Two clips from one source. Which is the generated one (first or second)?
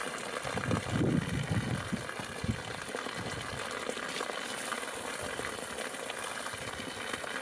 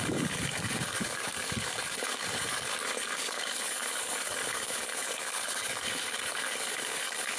second